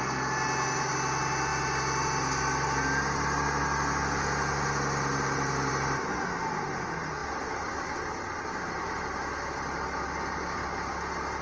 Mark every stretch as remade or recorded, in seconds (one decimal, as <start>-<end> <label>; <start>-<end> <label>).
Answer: 0.0-11.4 recorded